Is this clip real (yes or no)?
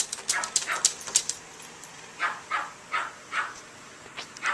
yes